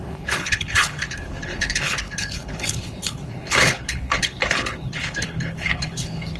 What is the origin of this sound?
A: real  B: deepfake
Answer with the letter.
B